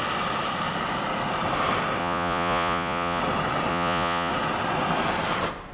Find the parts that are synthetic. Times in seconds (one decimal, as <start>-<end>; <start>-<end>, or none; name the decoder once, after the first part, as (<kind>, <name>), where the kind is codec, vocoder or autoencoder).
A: 2.0-3.2 (vocoder, Vocos); 3.7-4.3